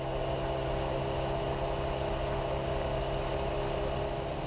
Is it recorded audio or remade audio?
recorded